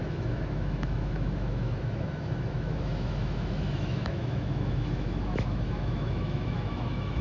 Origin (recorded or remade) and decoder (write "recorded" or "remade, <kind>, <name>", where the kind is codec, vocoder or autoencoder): remade, autoencoder, DAC-VAE